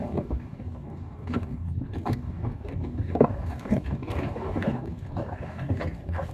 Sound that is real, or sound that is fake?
fake